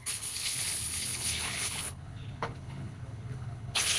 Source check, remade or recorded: remade